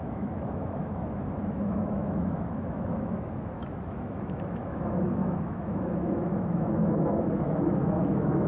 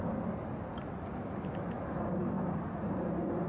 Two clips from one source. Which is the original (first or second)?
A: second